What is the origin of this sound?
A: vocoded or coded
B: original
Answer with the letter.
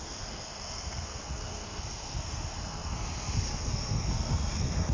A